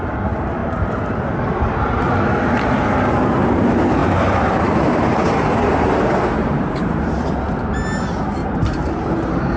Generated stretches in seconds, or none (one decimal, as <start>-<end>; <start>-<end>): 4.0-7.1; 8.4-9.6

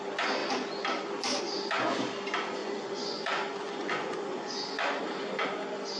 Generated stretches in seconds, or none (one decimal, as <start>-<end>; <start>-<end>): 2.6-5.0

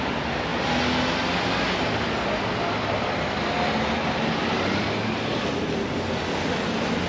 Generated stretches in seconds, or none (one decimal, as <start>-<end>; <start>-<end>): none

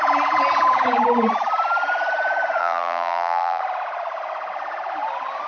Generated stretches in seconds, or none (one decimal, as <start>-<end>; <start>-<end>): 2.6-3.6

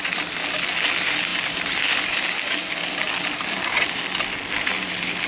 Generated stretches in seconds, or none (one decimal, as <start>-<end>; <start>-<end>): none

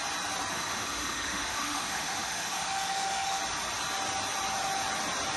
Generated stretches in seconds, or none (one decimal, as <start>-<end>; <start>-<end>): 0.5-3.4